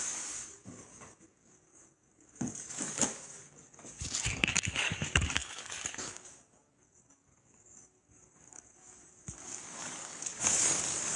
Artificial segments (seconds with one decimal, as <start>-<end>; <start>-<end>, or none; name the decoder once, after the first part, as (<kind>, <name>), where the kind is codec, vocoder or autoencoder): 0.0-11.2 (codec, DAC)